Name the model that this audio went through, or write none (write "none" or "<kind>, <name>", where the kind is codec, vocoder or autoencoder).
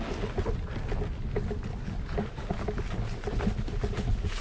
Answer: none